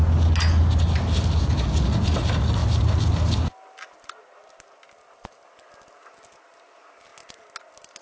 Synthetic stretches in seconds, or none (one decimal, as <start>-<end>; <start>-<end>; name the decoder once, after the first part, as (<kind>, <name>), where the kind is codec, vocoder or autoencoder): none